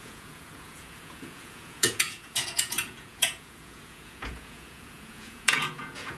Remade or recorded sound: remade